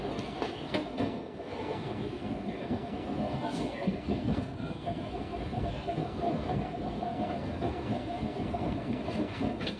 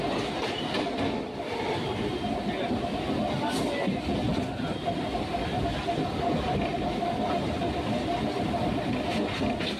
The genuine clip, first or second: second